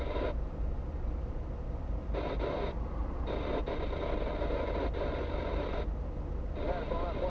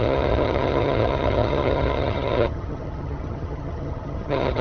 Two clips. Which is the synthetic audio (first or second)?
second